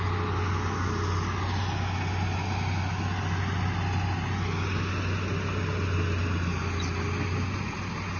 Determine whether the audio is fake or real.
real